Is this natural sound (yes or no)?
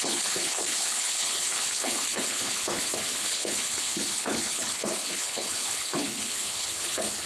no